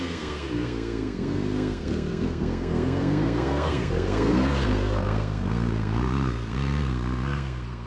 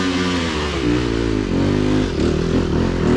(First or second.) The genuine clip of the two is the second